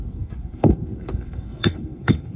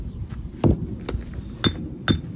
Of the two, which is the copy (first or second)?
first